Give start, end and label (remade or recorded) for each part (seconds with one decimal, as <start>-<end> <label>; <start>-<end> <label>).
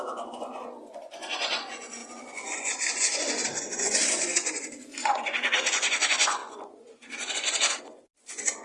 0.0-8.6 remade